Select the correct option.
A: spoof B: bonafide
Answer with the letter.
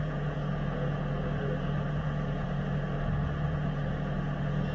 A